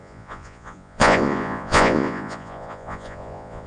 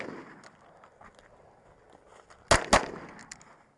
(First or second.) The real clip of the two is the second